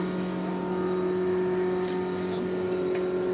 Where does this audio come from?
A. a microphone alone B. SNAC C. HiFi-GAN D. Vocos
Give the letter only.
A